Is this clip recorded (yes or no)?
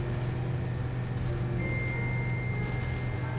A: yes